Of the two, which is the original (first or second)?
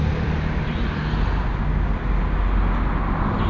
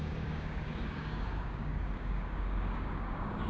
first